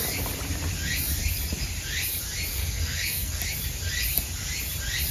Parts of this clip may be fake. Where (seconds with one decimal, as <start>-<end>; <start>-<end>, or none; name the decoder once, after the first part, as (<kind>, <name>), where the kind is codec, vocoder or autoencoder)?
2.5-3.4 (codec, SNAC)